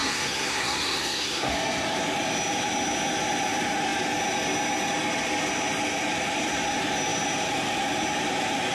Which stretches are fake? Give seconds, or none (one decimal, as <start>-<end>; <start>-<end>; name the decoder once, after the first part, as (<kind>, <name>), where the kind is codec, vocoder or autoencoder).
0.0-1.5 (codec, SNAC)